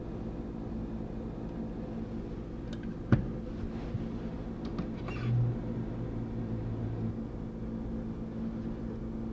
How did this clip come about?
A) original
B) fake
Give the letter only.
A